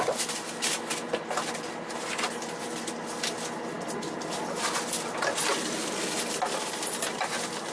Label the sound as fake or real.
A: real